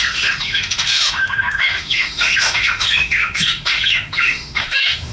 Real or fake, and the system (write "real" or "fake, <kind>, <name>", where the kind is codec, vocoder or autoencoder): fake, autoencoder, DAC-VAE